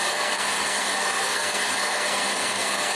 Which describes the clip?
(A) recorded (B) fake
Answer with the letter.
B